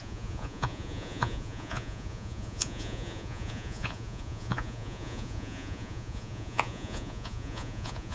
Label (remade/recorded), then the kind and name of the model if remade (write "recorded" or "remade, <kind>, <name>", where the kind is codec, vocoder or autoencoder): remade, vocoder, Vocos